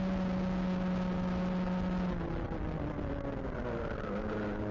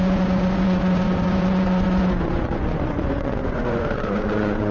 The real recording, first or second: first